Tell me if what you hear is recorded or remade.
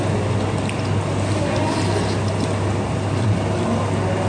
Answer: recorded